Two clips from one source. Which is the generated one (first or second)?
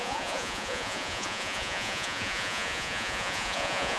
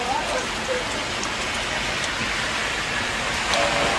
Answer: first